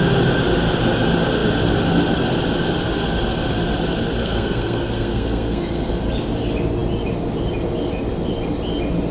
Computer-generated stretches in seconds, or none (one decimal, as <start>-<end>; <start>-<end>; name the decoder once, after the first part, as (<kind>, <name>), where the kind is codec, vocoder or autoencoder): 4.2-5.9 (codec, SNAC)